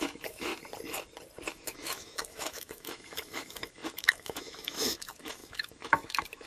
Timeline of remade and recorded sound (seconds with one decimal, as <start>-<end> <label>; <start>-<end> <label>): 0.0-0.5 remade; 0.5-1.5 recorded; 1.5-6.5 remade